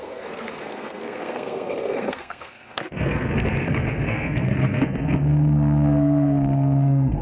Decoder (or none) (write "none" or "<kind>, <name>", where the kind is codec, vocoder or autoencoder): codec, SNAC